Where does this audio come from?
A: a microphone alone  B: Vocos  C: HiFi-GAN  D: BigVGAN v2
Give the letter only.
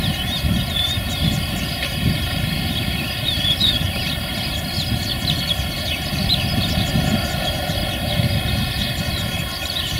D